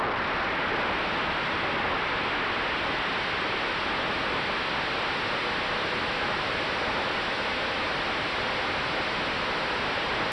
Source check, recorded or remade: recorded